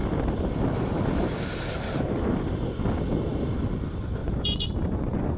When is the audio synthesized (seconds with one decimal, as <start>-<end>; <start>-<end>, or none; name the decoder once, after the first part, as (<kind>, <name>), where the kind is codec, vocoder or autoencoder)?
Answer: 4.2-5.4 (vocoder, Vocos)